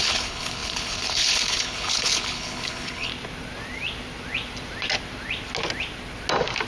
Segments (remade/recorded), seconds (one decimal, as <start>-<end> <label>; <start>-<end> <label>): 0.0-3.1 remade; 3.1-6.7 recorded